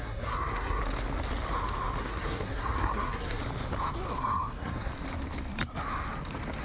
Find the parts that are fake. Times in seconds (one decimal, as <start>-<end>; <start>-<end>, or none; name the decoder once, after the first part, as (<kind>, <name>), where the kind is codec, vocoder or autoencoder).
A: 0.0-0.8 (codec, SNAC); 2.0-3.4; 4.2-4.9